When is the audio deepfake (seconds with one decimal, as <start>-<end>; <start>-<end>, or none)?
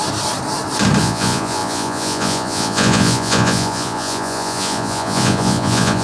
1.0-6.0